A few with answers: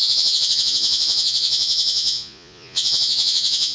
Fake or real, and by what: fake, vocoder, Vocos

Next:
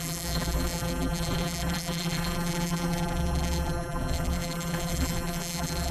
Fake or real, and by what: fake, vocoder, BigVGAN v2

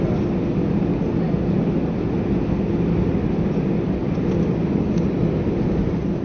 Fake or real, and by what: real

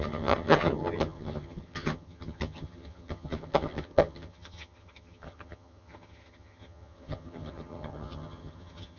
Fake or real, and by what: fake, vocoder, HiFi-GAN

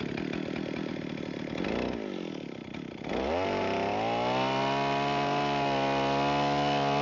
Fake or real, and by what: real